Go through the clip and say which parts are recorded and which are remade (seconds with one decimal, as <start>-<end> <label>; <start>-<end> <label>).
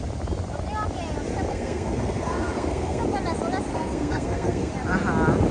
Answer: 0.0-1.5 recorded; 1.5-3.0 remade; 3.0-3.7 recorded; 3.7-4.7 remade; 4.7-5.5 recorded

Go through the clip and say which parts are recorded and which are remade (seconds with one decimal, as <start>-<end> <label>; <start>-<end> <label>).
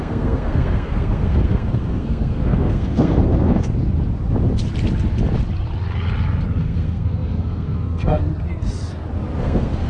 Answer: 0.0-3.6 remade; 3.6-6.6 recorded; 6.6-8.3 remade; 8.3-9.4 recorded; 9.4-9.9 remade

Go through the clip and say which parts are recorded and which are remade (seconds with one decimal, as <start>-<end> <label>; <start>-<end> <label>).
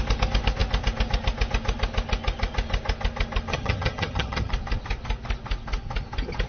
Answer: 0.0-3.5 recorded; 3.5-4.5 remade; 4.5-6.5 recorded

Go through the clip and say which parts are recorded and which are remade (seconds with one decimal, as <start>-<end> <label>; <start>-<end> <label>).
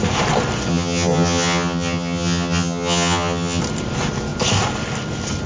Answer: 0.0-0.7 recorded; 0.7-3.6 remade; 3.6-5.5 recorded